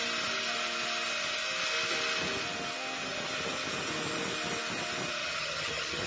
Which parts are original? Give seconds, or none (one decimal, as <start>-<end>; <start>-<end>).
0.0-5.2